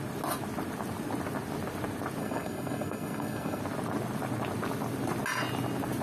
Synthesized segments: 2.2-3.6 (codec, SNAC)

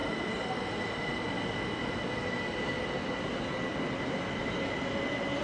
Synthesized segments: none

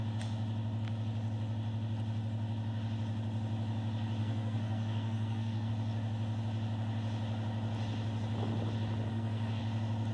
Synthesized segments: 4.2-5.7 (codec, SNAC); 9.1-9.6

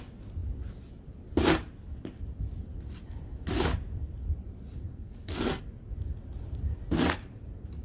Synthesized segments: 4.9-5.6 (codec, SNAC)

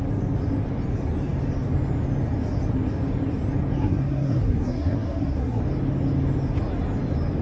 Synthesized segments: 3.8-5.6 (codec, SNAC)

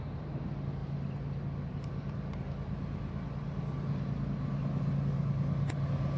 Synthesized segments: none

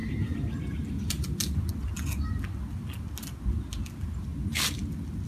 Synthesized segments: none